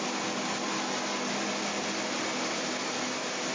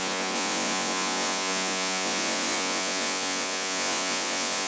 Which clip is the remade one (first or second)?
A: second